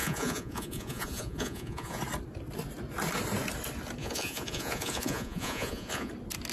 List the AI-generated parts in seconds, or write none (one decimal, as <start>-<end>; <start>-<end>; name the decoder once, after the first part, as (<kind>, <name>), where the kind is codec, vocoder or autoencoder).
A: 0.0-2.0 (vocoder, Vocos); 4.0-6.1